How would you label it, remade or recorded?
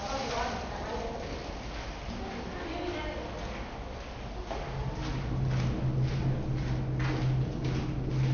recorded